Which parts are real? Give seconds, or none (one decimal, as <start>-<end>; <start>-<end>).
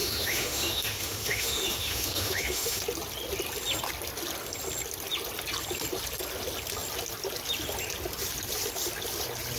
2.8-9.6